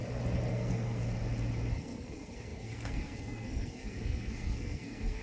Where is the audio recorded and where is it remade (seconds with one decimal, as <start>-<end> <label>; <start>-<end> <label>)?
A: 0.0-0.5 recorded; 0.5-1.0 remade; 1.0-1.7 recorded; 1.7-5.2 remade